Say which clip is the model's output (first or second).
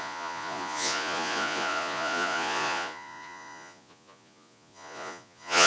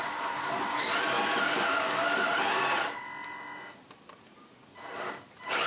first